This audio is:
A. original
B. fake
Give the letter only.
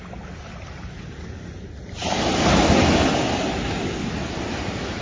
A